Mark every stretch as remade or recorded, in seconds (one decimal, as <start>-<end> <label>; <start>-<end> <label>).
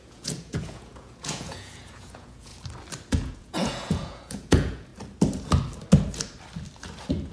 0.0-2.5 remade; 2.5-3.1 recorded; 3.1-4.9 remade; 4.9-7.3 recorded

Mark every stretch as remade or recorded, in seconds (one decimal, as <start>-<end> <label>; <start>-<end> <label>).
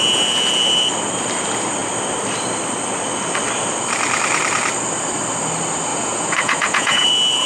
0.0-5.9 recorded; 5.9-7.1 remade; 7.1-7.5 recorded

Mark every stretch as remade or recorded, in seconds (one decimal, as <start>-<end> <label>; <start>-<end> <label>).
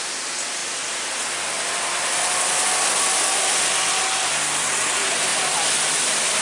0.0-6.4 recorded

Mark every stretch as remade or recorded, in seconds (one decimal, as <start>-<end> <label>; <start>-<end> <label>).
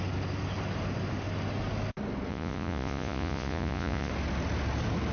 0.0-2.3 recorded; 2.3-4.1 remade; 4.1-5.1 recorded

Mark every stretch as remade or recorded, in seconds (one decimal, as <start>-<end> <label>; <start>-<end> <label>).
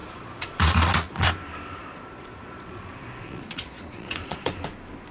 0.0-1.3 remade; 1.3-1.8 recorded; 1.8-4.5 remade; 4.5-5.1 recorded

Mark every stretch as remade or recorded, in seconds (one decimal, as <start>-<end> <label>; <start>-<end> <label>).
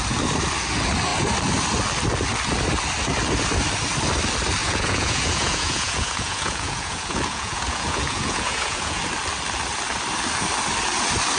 0.0-4.6 recorded; 4.6-9.0 remade; 9.0-11.4 recorded